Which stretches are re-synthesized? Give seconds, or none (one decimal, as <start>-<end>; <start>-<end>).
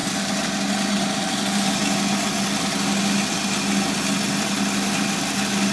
none